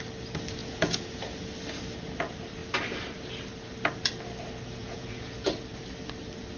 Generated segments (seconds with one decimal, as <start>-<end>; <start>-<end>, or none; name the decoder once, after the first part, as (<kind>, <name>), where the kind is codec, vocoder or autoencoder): 0.6-1.1 (vocoder, Vocos); 4.8-5.5